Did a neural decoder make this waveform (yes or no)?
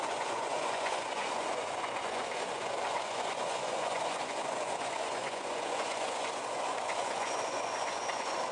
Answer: yes